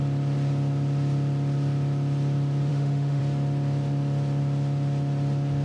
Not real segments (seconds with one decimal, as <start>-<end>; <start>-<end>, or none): 2.7-3.2